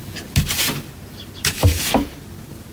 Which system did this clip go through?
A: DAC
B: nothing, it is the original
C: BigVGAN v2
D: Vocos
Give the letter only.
B